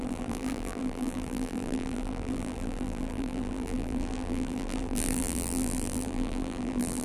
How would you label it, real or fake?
fake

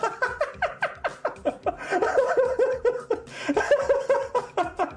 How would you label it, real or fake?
real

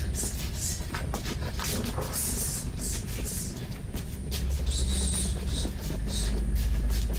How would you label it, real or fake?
real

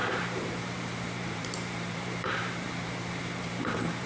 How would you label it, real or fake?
fake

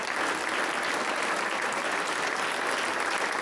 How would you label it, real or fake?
real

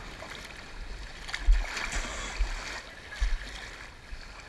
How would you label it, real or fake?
real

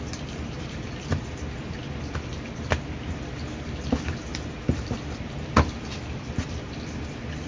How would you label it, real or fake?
fake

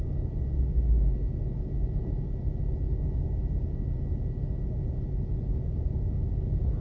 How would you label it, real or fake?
real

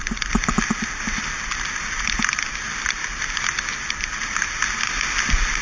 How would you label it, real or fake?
real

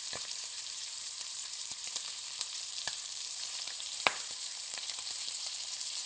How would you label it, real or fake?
fake